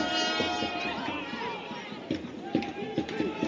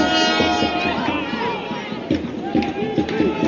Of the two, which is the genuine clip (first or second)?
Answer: second